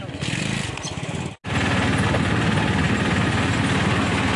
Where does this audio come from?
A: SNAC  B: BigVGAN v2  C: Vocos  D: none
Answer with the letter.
D